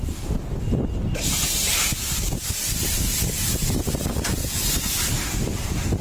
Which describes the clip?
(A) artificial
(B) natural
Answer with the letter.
B